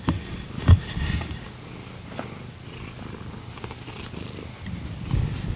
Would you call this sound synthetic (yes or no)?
no